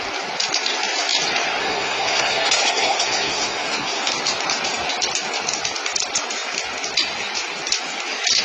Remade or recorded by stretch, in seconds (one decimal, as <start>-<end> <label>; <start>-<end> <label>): 0.0-1.6 recorded; 1.6-4.0 remade; 4.0-8.4 recorded